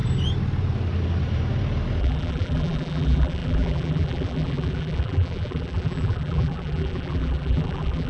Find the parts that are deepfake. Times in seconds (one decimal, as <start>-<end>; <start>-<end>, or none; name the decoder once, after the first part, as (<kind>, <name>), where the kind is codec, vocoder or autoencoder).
2.0-8.1 (vocoder, BigVGAN v2)